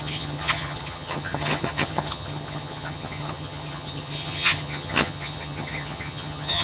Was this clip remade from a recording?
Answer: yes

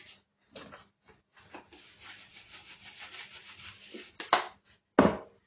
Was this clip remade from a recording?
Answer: no